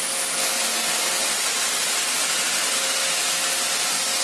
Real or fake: real